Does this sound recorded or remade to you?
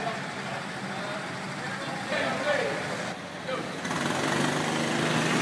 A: recorded